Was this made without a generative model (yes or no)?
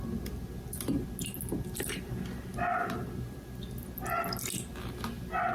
yes